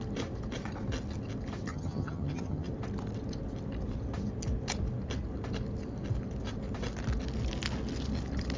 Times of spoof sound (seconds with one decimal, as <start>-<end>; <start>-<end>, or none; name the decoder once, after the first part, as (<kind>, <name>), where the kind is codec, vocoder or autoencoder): 1.7-2.7 (vocoder, HiFi-GAN)

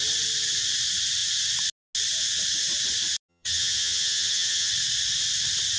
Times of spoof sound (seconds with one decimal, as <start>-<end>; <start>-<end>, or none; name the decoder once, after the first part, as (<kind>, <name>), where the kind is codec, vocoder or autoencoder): 3.3-4.7 (vocoder, HiFi-GAN)

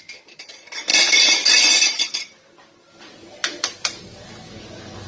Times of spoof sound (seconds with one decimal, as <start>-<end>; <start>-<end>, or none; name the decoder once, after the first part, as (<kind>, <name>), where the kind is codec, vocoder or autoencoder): 0.9-2.2 (vocoder, BigVGAN v2); 3.4-4.3

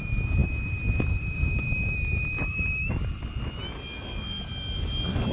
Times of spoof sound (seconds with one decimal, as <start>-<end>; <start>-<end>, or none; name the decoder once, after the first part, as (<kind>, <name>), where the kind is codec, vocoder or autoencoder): 0.4-2.9 (vocoder, BigVGAN v2)

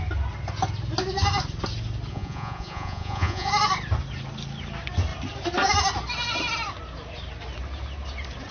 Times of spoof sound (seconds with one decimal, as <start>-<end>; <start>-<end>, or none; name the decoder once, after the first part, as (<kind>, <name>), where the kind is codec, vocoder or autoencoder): 2.1-3.5 (vocoder, Vocos)

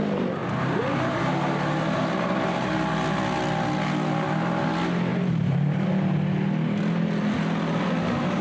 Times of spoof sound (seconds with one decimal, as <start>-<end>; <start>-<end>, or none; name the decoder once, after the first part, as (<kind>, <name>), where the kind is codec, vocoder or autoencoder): 0.4-1.3 (vocoder, BigVGAN v2); 5.1-5.9